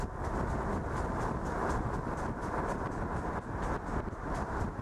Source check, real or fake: real